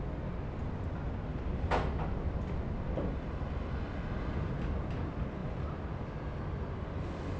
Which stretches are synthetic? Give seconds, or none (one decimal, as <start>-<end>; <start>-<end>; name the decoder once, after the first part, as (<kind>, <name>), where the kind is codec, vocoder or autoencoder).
5.4-6.0 (vocoder, BigVGAN v2)